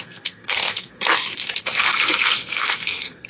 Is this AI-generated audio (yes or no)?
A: yes